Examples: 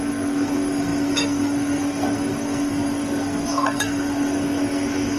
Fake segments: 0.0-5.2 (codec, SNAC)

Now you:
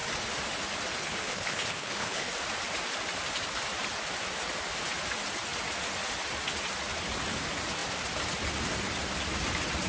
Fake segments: 1.0-2.3 (codec, HILCodec)

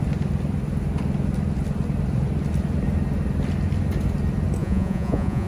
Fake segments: 4.6-5.5 (vocoder, Vocos)

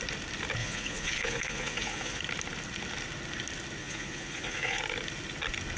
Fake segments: 0.6-2.2 (vocoder, Vocos); 3.8-4.8

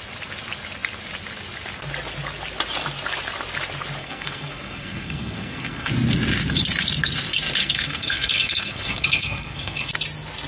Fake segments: 4.0-5.9 (codec, SNAC); 7.6-9.9

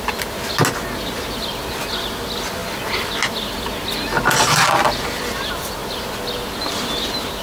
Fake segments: none

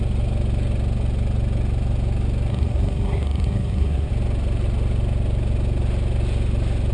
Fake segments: 2.5-4.1 (codec, SNAC)